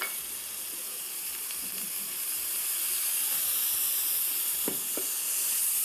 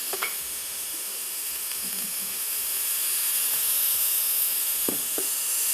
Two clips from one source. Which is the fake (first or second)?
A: second